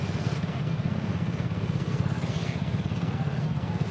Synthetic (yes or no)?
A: yes